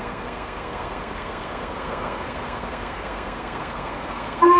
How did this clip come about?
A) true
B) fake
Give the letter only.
B